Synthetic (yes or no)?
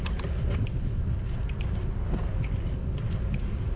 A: no